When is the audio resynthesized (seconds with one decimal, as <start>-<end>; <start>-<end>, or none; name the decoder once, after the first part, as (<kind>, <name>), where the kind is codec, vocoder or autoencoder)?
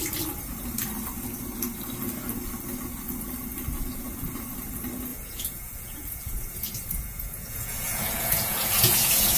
5.1-9.4 (vocoder, Vocos)